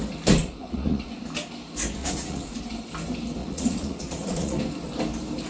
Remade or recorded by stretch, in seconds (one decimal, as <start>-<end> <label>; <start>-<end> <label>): 0.0-0.4 recorded; 0.4-1.2 remade; 1.2-2.0 recorded; 2.0-2.6 remade; 2.6-3.4 recorded; 3.4-4.6 remade; 4.6-5.5 recorded